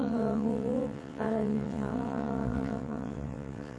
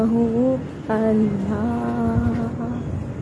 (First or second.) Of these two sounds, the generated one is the first